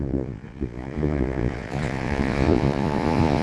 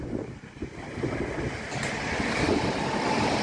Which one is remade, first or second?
first